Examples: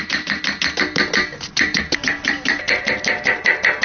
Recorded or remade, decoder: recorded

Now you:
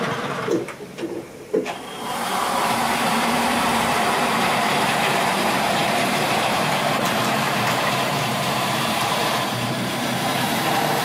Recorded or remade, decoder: remade, vocoder, BigVGAN v2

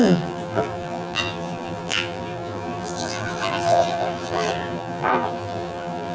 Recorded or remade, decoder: remade, vocoder, BigVGAN v2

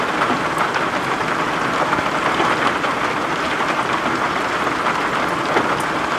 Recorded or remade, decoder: recorded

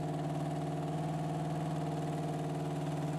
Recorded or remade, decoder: recorded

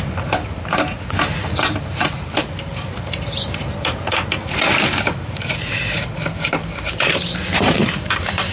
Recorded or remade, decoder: remade, vocoder, BigVGAN v2